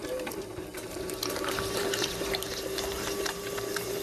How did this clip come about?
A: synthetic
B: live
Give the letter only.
B